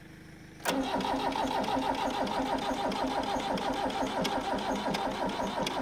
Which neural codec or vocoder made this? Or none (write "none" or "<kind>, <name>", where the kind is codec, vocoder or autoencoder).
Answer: none